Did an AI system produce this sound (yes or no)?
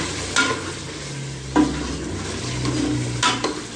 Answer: no